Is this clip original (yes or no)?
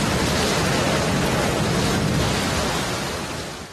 yes